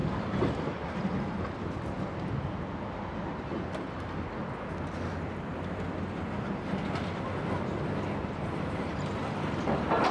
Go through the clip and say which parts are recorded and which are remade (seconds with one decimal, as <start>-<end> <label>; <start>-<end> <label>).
0.0-8.2 recorded; 8.2-9.1 remade; 9.1-10.1 recorded